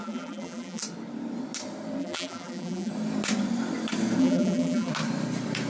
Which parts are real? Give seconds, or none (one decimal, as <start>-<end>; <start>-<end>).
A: 0.8-2.0; 2.9-4.2; 4.9-5.7